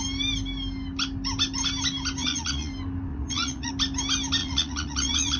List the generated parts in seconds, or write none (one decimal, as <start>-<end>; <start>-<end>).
2.2-2.7; 3.1-3.7; 4.4-5.4